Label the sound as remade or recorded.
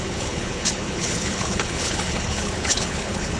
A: remade